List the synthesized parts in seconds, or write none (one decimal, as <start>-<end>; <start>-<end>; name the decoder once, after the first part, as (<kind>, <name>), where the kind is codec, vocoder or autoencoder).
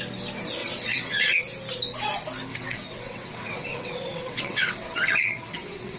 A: 0.6-1.4 (vocoder, WaveNeXt); 2.5-6.0